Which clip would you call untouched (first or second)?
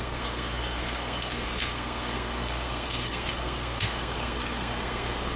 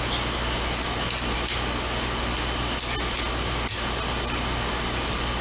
second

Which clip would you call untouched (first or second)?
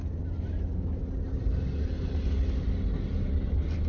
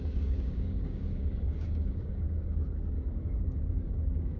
first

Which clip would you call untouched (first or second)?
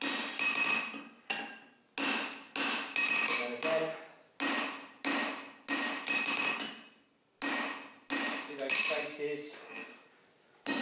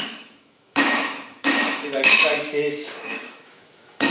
first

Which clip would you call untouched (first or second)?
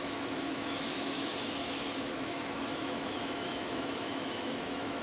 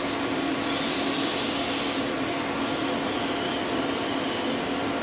second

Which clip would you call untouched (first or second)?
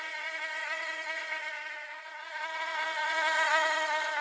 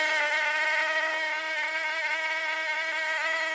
second